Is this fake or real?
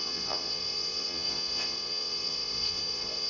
fake